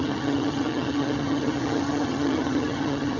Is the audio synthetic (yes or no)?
yes